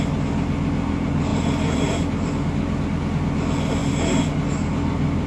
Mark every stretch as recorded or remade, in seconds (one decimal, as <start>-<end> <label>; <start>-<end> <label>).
0.0-1.3 recorded; 1.3-1.9 remade; 1.9-3.8 recorded; 3.8-4.5 remade; 4.5-5.3 recorded